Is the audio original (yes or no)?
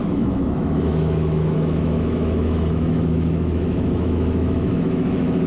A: no